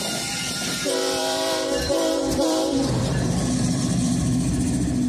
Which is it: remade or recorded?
remade